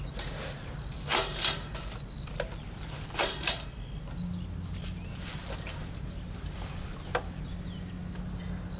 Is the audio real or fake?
real